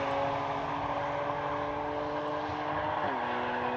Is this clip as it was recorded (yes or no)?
yes